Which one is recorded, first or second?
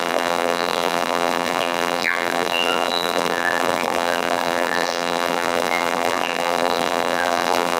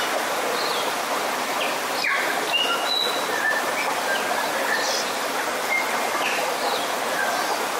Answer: second